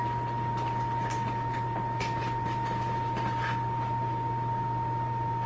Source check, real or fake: real